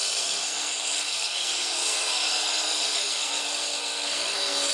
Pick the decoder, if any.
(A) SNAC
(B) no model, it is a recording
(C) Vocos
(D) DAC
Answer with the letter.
A